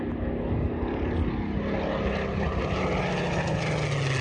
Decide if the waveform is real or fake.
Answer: real